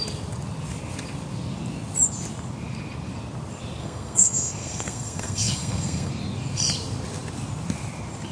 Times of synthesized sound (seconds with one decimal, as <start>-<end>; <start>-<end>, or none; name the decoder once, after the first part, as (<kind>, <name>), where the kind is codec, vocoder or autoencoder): 3.8-6.1 (codec, SNAC)